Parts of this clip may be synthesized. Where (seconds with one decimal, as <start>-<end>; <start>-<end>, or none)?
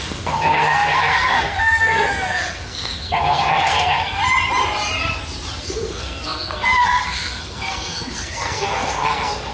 0.0-4.2; 5.6-9.5